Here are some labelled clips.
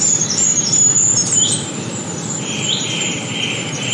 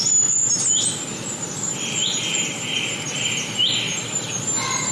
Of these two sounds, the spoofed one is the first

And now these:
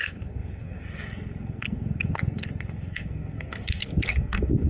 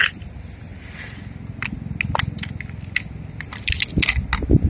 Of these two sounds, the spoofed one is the first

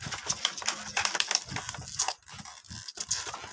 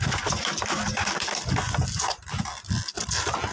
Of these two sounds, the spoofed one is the second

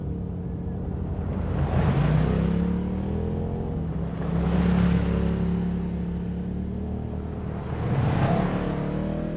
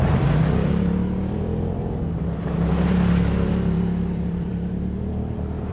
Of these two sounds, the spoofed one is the second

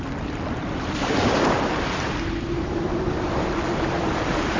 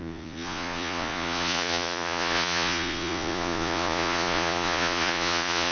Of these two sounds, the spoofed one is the second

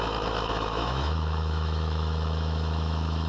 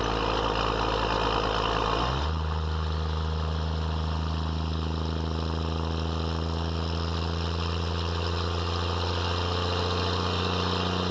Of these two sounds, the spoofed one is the first